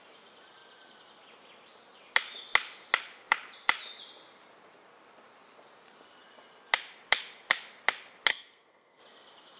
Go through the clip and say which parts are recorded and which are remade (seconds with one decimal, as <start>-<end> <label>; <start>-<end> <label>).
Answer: 0.0-8.3 recorded; 8.3-9.0 remade; 9.0-9.6 recorded